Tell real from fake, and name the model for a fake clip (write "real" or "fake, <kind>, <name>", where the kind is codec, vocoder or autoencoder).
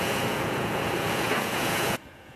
fake, vocoder, Vocos